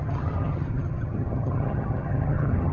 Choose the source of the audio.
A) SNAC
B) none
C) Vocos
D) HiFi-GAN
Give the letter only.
D